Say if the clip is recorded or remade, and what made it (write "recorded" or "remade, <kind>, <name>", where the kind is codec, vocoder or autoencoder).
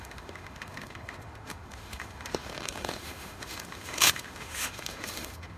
remade, autoencoder, DAC-VAE